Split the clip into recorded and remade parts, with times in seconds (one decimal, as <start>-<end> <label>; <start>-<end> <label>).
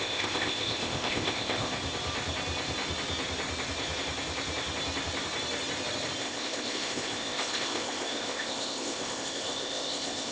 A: 0.0-1.7 remade; 1.7-6.2 recorded; 6.2-10.3 remade